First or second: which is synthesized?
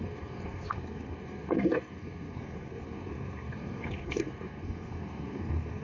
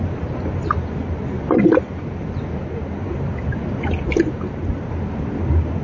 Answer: first